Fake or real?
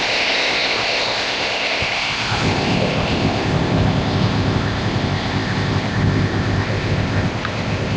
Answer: fake